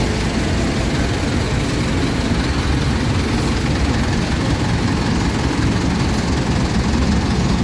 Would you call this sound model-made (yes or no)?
no